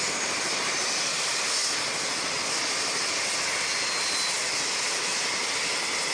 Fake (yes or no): no